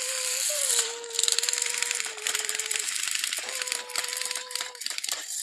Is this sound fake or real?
fake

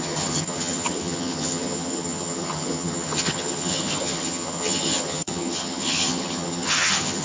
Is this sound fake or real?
fake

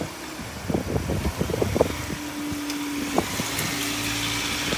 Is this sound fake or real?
real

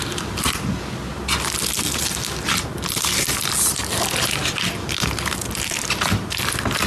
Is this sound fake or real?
real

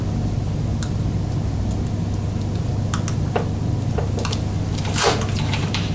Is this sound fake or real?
real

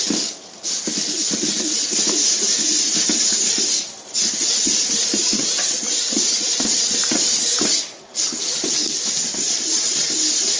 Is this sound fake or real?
real